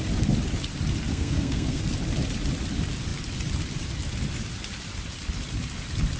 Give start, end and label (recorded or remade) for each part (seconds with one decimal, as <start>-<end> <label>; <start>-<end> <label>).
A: 0.0-1.1 recorded; 1.1-1.8 remade; 1.8-6.2 recorded